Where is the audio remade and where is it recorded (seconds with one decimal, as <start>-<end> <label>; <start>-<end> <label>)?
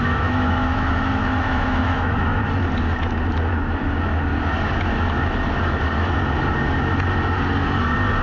0.0-2.4 remade; 2.4-3.5 recorded; 3.5-4.3 remade; 4.3-8.2 recorded